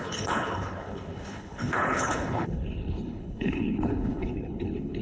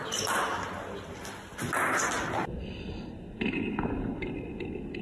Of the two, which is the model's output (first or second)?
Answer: first